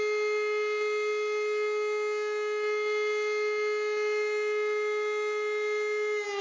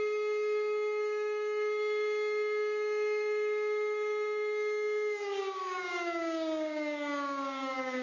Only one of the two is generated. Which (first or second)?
second